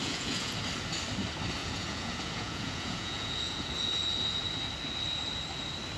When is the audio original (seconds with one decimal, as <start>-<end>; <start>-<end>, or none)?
0.6-1.6; 3.7-6.0